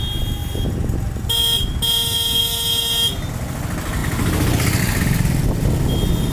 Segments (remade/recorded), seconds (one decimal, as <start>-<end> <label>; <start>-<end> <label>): 0.0-6.3 recorded